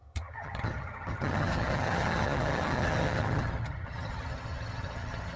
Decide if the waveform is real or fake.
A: fake